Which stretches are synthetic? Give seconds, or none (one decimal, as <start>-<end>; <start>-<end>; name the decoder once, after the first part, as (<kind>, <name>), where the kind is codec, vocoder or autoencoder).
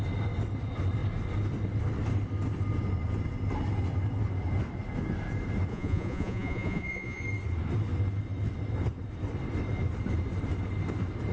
5.7-7.2 (vocoder, Vocos)